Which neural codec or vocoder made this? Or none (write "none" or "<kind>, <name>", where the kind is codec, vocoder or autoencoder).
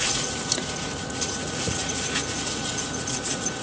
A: vocoder, Vocos